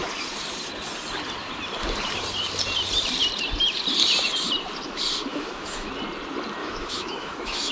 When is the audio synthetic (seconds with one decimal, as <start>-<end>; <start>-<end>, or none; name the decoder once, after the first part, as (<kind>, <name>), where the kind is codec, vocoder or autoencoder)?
5.3-5.9 (autoencoder, DAC-VAE); 6.6-7.7